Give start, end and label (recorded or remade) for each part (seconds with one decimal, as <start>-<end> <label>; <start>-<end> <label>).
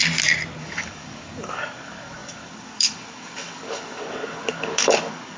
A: 0.0-0.6 recorded; 0.6-5.4 remade